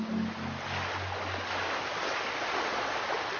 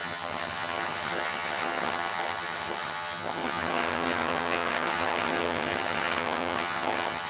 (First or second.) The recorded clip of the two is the first